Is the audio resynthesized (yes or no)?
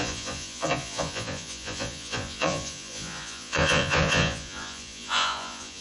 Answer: yes